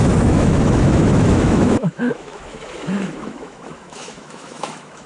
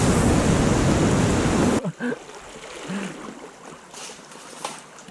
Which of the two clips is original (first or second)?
second